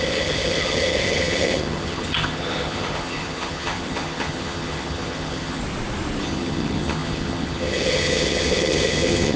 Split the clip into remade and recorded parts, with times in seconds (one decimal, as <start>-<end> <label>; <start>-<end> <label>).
0.0-5.6 remade; 5.6-6.2 recorded; 6.2-9.4 remade